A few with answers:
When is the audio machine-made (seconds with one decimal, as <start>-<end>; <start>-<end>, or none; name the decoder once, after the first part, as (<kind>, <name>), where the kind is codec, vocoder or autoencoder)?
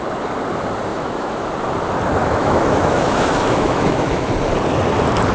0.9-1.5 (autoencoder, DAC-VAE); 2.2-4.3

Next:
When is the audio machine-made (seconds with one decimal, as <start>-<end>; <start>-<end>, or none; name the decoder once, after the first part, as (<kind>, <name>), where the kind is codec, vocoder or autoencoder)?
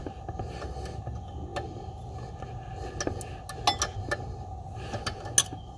none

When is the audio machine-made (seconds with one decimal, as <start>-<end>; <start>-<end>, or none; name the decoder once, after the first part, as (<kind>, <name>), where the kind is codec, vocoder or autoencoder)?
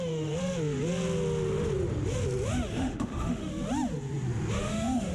0.0-0.4 (autoencoder, DAC-VAE); 2.7-3.5; 4.6-5.1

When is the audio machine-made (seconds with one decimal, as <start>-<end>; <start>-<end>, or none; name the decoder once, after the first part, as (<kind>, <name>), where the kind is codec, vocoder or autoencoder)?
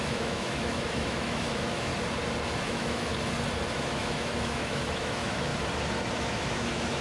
0.0-1.9 (autoencoder, DAC-VAE); 2.6-3.1; 3.7-5.5; 6.2-7.0